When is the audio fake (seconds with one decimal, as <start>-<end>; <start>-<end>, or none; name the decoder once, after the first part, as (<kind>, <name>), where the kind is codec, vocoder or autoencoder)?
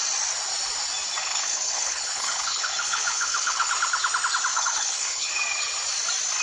1.2-3.7 (codec, HILCodec); 4.5-5.3